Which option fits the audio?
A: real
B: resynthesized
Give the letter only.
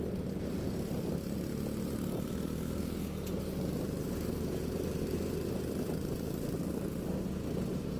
A